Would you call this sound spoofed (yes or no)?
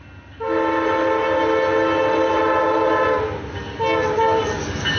no